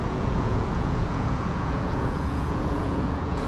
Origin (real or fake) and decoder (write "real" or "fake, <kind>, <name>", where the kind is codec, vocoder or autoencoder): fake, vocoder, Vocos